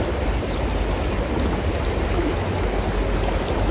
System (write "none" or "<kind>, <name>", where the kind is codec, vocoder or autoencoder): none